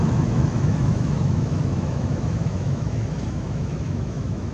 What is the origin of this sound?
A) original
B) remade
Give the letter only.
B